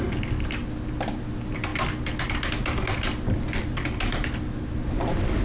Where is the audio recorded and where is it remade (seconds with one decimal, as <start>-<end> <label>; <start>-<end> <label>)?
0.0-5.4 recorded